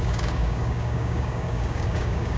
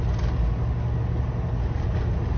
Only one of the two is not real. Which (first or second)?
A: first